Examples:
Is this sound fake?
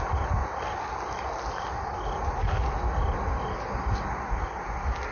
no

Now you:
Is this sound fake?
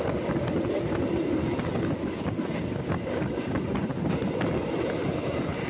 no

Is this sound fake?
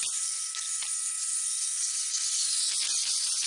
yes